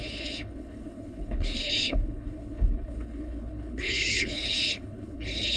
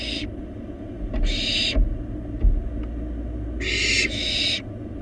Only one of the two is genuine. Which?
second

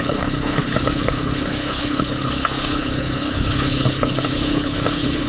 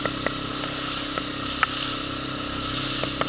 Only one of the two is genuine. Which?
second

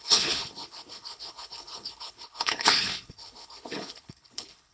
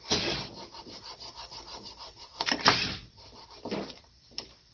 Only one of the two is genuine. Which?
second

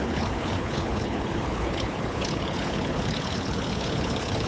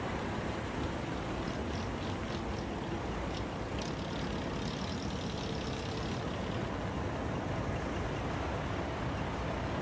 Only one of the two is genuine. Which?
second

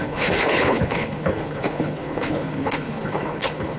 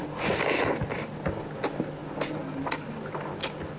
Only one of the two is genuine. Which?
second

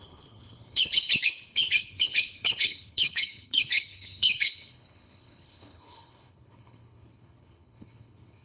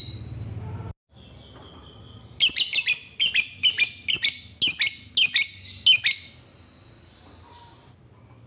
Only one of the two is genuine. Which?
second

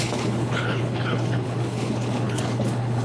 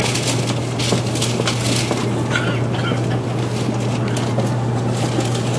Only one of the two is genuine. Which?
second